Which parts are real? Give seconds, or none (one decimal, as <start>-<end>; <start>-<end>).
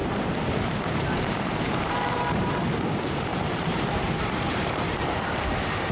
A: none